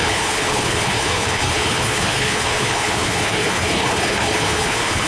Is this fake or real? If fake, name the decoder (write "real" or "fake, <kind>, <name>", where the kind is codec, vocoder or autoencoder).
fake, codec, HILCodec